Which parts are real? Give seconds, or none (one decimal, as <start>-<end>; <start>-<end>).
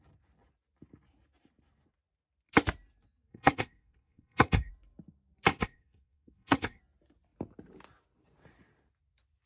0.0-3.3; 4.7-5.5; 6.8-9.5